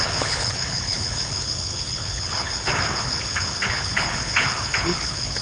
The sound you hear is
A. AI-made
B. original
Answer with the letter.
A